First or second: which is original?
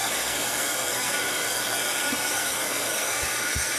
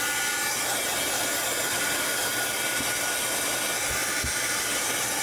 second